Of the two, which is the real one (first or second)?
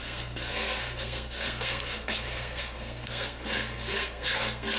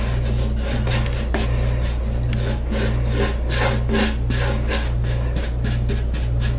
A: second